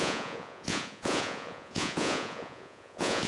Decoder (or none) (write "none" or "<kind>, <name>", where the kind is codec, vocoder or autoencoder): vocoder, Vocos